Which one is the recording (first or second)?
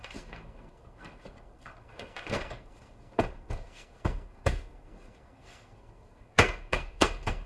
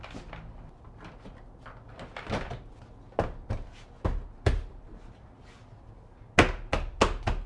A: second